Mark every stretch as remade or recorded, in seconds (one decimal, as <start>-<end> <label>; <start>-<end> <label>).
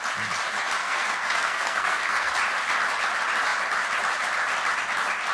0.0-0.8 recorded; 0.8-2.3 remade; 2.3-5.3 recorded